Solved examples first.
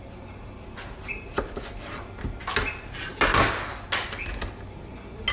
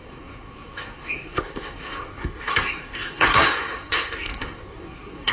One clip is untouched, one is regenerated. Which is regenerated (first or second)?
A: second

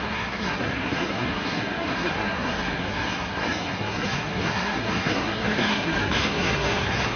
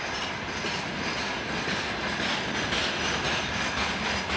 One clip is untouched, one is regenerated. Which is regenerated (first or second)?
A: first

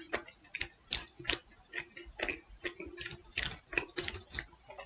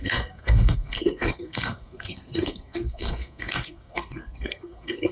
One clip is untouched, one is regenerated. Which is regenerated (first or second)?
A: second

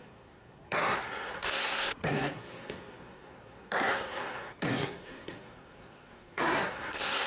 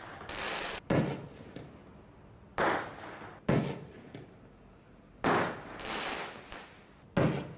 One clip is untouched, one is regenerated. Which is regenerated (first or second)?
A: first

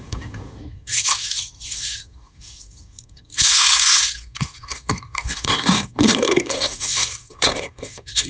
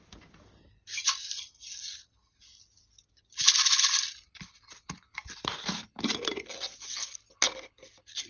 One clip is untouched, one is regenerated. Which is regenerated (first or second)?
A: first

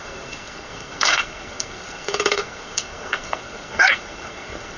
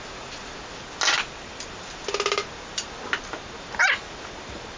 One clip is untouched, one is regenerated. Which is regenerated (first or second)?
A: first